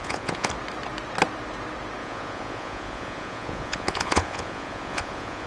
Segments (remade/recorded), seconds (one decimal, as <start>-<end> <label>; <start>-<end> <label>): 0.0-0.5 remade; 0.5-2.0 recorded; 2.0-5.5 remade